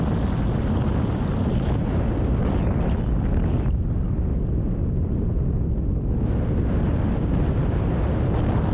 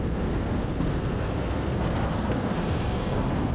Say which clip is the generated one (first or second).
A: second